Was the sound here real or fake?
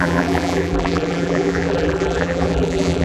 fake